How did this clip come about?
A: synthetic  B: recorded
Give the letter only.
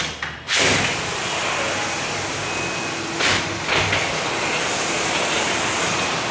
B